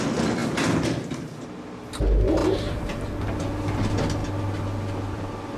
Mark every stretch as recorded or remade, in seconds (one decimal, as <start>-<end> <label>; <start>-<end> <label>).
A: 0.0-5.6 recorded